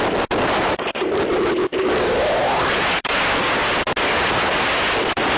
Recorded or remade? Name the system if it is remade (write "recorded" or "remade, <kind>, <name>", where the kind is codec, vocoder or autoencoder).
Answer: recorded